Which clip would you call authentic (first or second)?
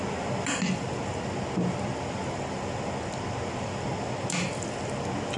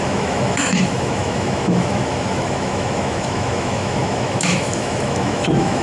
first